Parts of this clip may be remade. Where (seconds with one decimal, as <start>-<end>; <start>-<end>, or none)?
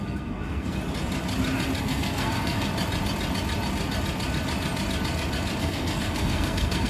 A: 0.0-0.8; 1.8-2.7; 5.6-6.9